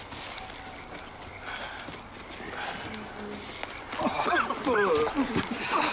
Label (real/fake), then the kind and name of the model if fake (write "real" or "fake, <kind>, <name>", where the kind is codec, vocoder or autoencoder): real